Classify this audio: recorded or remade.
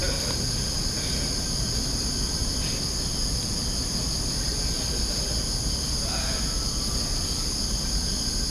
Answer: recorded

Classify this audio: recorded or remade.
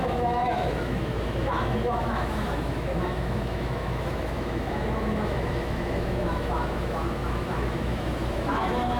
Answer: remade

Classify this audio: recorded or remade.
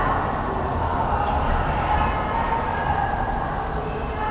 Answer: recorded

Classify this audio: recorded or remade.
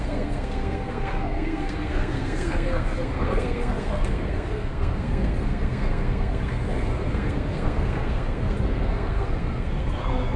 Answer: remade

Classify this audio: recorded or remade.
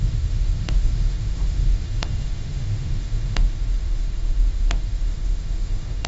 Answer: remade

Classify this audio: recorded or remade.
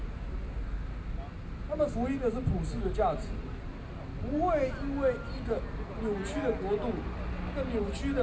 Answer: recorded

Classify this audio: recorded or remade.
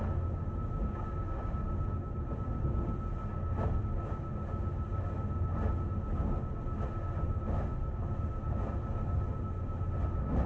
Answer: recorded